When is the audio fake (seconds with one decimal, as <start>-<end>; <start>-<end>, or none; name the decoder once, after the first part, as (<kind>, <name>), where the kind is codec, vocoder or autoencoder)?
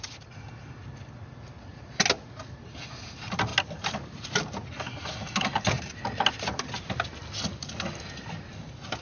none